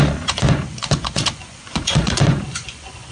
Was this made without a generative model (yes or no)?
no